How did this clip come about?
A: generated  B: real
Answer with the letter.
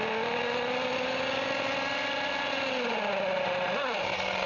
B